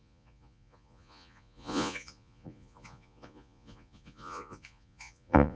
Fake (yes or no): yes